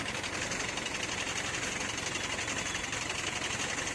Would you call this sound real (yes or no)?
yes